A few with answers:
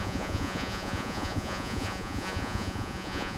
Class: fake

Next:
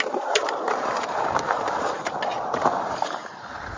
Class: fake